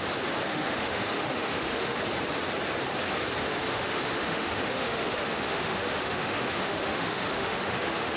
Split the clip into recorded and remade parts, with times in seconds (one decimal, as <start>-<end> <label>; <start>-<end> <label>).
0.0-0.5 recorded; 0.5-2.0 remade; 2.0-3.4 recorded; 3.4-8.2 remade